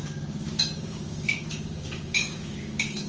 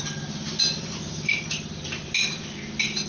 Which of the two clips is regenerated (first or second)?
first